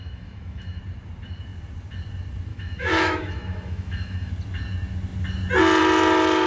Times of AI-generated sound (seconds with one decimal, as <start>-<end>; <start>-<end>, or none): 0.0-0.8; 2.5-4.3